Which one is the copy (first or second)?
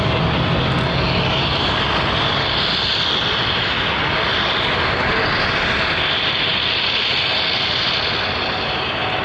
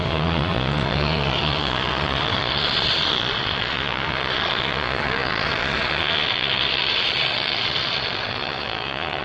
second